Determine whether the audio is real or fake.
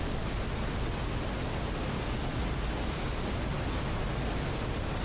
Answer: real